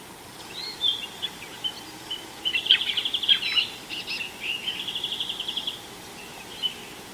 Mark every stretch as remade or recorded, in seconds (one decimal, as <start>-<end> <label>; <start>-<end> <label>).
0.0-1.5 remade; 1.5-5.4 recorded; 5.4-7.1 remade